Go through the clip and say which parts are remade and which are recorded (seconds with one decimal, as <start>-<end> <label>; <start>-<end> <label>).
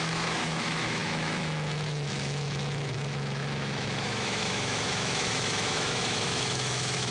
0.0-7.1 remade